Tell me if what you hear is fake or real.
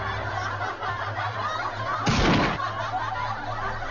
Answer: real